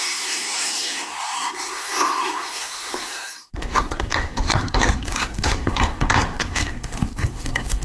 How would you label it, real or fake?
fake